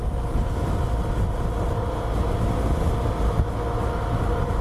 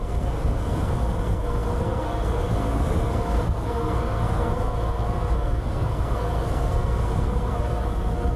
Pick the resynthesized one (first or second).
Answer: second